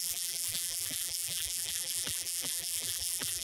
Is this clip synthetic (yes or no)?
yes